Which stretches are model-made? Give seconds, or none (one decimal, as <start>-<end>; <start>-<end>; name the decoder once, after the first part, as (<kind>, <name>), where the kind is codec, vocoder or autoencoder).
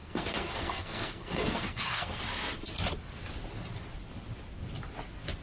0.0-2.2 (codec, SNAC)